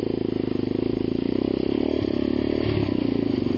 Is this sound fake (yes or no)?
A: no